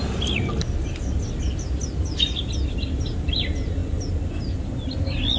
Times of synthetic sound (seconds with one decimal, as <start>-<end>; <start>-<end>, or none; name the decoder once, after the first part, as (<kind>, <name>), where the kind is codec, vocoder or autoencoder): none